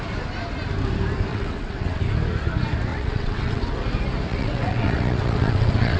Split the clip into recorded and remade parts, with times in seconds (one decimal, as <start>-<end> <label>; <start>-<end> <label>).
0.0-1.3 recorded; 1.3-2.0 remade; 2.0-2.9 recorded; 2.9-3.8 remade; 3.8-4.3 recorded; 4.3-6.0 remade

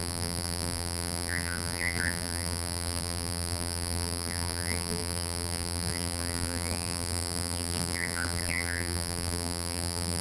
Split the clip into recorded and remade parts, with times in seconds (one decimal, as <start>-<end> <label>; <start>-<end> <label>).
0.0-10.2 remade